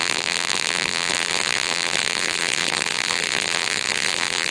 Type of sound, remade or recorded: remade